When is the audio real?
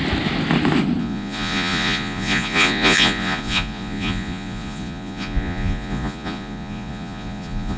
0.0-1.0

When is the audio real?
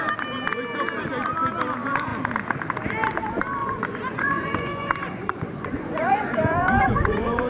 0.0-3.6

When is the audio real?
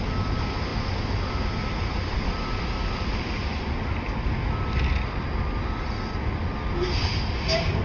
0.0-7.8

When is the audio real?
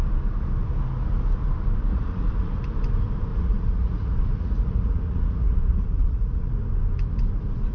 0.0-1.9; 2.6-3.3; 6.5-7.7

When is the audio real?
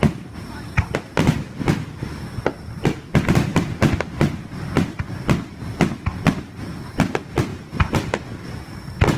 0.0-9.2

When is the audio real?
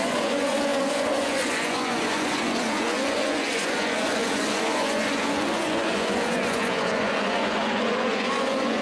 none